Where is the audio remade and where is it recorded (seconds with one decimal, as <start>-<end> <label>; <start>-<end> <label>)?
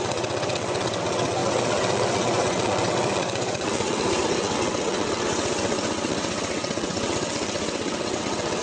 0.0-8.6 remade